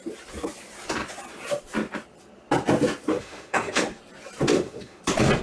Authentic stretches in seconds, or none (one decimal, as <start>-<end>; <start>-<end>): 0.0-3.1; 3.8-4.5; 5.0-5.4